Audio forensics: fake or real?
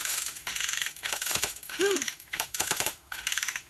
fake